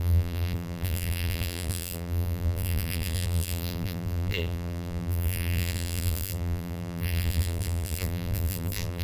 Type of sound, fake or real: fake